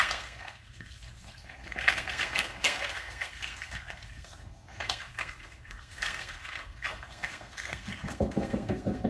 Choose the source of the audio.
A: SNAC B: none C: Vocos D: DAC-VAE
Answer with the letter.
A